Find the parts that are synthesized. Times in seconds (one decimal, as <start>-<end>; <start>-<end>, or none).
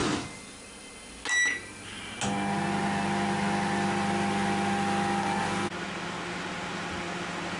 none